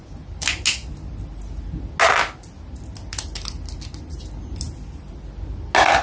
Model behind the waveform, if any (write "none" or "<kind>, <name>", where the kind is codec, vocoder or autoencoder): none